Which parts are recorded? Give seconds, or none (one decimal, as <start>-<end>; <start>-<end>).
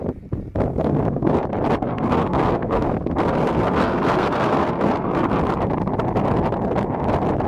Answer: 0.0-0.7; 1.4-1.8; 5.3-7.5